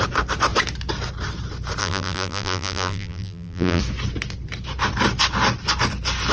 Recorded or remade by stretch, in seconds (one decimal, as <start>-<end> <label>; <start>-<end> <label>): 0.0-1.8 recorded; 1.8-3.8 remade; 3.8-6.3 recorded